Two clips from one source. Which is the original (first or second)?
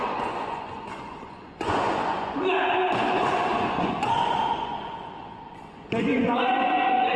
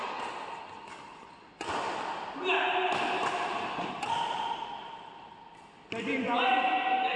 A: second